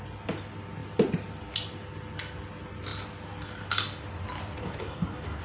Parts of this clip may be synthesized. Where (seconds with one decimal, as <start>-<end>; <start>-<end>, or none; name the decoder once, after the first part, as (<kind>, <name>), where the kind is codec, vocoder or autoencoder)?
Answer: 4.6-5.4 (codec, DAC)